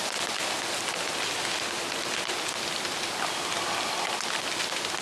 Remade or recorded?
recorded